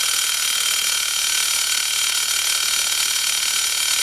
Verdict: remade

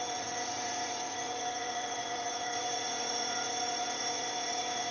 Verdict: remade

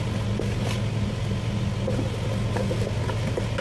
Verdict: recorded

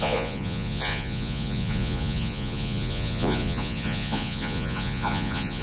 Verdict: remade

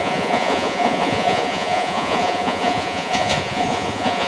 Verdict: remade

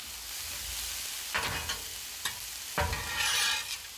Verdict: recorded